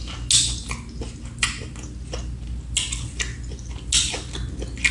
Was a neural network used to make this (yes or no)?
no